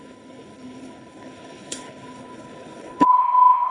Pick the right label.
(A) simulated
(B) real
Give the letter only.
A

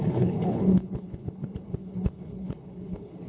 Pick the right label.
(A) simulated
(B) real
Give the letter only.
A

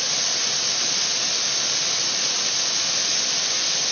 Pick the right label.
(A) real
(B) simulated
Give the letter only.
A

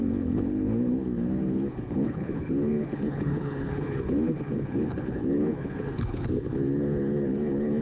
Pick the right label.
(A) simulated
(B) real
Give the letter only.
A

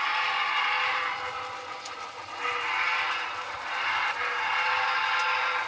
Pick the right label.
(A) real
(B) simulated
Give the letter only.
A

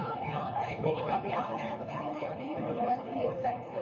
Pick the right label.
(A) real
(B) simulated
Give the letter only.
B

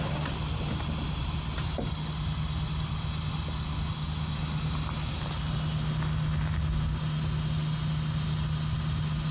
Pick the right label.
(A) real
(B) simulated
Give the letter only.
A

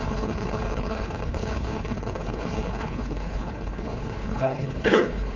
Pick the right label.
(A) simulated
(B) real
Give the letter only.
A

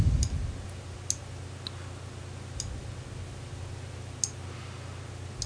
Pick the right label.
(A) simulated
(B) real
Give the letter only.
B